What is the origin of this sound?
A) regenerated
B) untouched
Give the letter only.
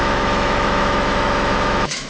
A